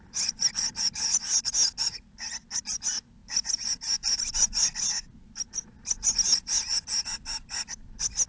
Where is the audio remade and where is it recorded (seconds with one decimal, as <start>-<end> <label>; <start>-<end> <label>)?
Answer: 0.0-8.3 recorded